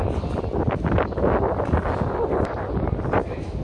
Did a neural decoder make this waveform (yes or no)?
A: no